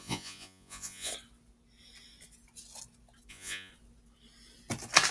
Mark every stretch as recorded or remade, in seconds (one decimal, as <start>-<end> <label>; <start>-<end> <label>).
0.0-1.1 remade; 1.1-3.3 recorded; 3.3-3.7 remade; 3.7-5.1 recorded

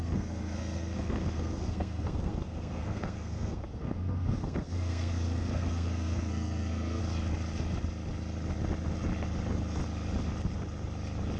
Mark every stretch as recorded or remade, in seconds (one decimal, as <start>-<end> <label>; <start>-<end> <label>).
0.0-7.0 remade; 7.0-11.4 recorded

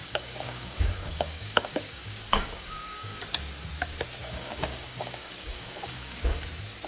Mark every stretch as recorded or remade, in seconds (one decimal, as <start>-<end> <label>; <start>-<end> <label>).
0.0-3.2 remade; 3.2-4.2 recorded; 4.2-6.4 remade; 6.4-6.9 recorded

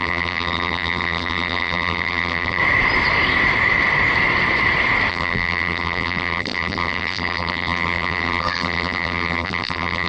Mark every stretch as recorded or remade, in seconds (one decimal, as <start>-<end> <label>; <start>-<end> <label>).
0.0-2.6 remade; 2.6-5.1 recorded; 5.1-10.1 remade